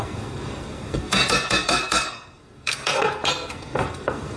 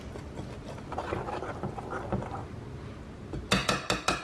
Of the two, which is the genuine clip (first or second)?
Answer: second